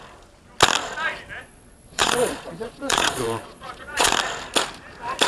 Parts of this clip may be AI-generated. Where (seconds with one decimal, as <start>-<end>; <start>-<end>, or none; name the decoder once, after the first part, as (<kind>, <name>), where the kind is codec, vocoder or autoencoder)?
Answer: 1.4-4.1 (vocoder, Vocos)